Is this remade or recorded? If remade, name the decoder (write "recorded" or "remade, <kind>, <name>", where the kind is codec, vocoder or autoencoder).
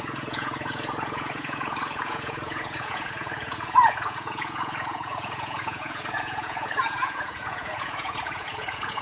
remade, vocoder, Vocos